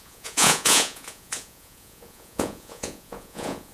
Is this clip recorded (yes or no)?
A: no